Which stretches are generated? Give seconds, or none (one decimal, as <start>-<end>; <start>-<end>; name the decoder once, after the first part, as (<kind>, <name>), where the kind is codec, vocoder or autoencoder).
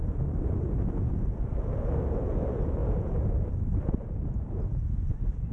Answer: 2.8-3.8 (vocoder, BigVGAN v2)